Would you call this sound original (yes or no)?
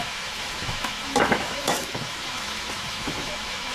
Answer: no